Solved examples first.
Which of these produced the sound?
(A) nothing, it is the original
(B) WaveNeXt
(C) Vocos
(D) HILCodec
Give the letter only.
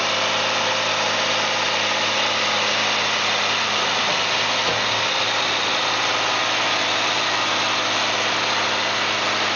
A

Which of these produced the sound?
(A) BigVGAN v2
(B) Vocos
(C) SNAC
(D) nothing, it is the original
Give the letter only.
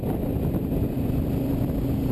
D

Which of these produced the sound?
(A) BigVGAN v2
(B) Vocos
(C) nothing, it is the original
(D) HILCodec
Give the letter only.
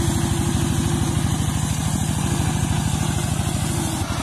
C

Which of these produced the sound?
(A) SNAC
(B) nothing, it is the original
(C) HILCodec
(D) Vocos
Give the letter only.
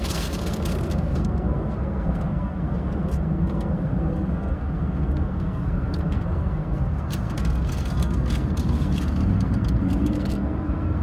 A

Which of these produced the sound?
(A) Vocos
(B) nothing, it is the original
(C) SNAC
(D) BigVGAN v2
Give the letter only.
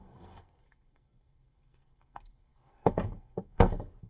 C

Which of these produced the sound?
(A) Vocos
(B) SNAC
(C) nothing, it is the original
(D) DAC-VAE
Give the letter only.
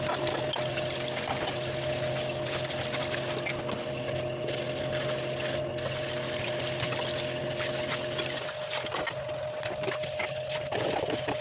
C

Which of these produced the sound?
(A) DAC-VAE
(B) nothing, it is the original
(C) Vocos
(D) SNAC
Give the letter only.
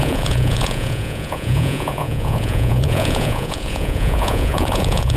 C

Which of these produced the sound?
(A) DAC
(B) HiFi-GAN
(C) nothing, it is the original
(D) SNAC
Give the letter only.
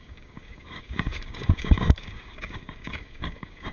A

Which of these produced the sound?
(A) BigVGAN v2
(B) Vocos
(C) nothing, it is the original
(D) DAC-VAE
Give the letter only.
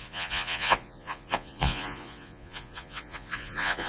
B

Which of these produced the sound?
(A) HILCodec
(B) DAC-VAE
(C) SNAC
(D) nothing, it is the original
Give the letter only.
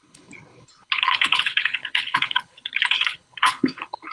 A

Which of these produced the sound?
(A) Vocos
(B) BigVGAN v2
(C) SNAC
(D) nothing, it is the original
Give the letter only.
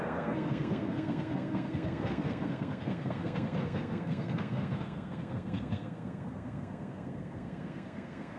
C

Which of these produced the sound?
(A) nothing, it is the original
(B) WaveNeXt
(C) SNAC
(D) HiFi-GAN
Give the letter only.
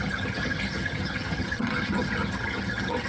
D